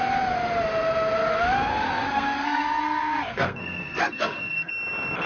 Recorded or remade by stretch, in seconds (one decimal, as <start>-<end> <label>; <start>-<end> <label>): 0.0-1.7 recorded; 1.7-4.7 remade; 4.7-5.3 recorded